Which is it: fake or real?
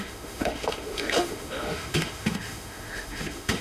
fake